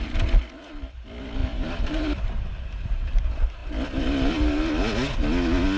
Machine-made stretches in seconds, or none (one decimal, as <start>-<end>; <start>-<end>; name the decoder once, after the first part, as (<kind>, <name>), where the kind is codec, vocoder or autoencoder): 1.4-3.2 (vocoder, BigVGAN v2)